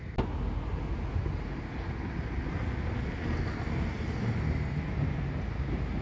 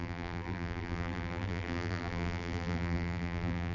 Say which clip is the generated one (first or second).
second